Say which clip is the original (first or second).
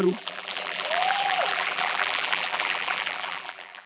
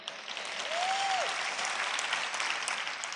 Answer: second